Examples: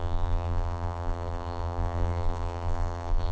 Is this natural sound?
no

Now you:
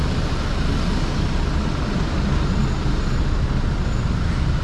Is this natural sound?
yes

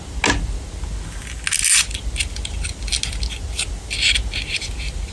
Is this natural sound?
yes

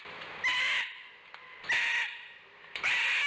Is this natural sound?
no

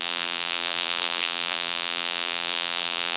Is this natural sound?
no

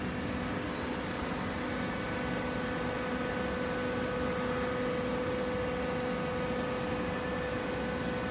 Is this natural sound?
yes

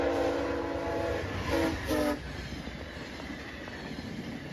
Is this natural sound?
yes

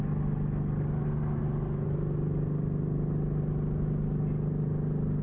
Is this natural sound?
yes